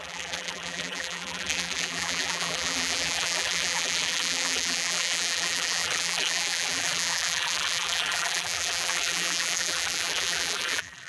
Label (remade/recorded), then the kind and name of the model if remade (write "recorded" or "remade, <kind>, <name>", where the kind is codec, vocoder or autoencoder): remade, vocoder, BigVGAN v2